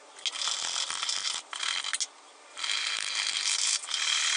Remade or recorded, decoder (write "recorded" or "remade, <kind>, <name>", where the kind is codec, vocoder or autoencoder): recorded